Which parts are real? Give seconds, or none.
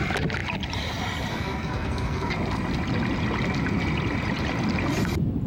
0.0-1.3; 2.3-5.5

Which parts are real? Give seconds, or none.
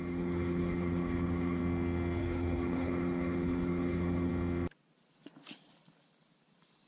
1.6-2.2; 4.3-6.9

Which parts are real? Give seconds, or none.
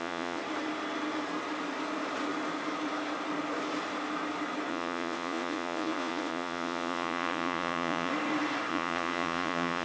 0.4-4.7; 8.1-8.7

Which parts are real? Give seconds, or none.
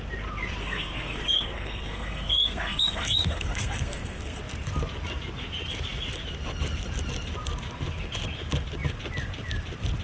0.0-0.6; 4.4-10.0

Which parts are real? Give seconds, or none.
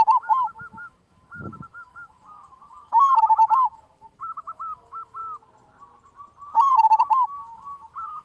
5.2-7.0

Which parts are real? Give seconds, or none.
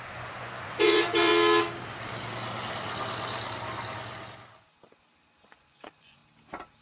1.3-5.4; 6.2-6.8